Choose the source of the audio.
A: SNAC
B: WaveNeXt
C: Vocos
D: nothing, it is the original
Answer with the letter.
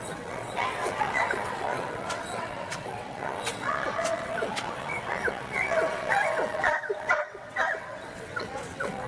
B